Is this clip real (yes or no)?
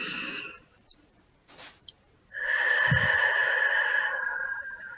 no